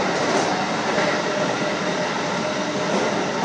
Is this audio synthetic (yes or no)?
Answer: yes